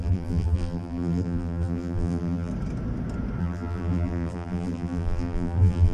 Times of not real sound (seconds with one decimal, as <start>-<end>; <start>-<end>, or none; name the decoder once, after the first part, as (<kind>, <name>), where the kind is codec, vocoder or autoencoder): 0.0-2.5 (vocoder, BigVGAN v2); 3.4-5.9